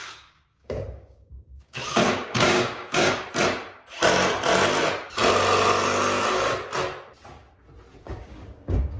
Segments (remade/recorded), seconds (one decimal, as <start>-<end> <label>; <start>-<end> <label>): 0.0-3.3 remade; 3.3-8.0 recorded; 8.0-9.0 remade